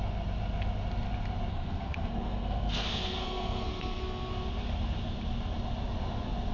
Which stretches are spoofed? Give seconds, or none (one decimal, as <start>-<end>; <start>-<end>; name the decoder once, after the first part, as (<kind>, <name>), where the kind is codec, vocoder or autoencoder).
1.5-4.3 (codec, SNAC)